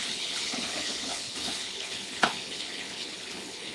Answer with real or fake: fake